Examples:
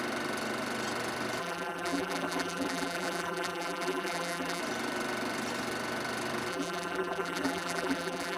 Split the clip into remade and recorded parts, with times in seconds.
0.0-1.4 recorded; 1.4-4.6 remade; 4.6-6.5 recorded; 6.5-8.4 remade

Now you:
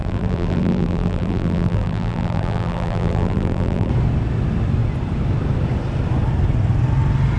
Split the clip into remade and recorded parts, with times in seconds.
0.0-3.9 remade; 3.9-7.4 recorded